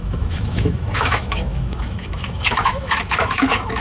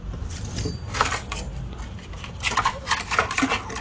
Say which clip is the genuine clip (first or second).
second